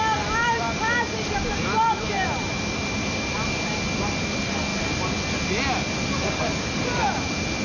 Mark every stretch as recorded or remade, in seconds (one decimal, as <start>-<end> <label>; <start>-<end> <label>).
0.0-7.6 recorded